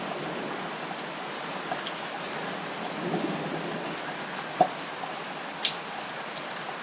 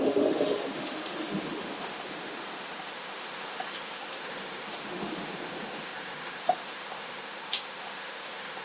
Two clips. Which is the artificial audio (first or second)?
second